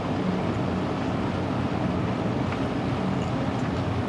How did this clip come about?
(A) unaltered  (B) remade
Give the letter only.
B